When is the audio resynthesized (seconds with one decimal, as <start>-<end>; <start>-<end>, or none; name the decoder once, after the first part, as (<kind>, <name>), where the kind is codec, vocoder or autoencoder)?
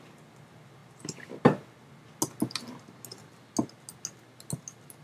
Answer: none